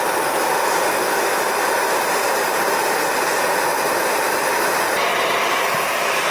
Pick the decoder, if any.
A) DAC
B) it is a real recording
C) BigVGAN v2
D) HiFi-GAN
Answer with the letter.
B